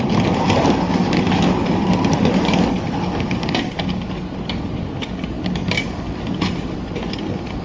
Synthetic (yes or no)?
no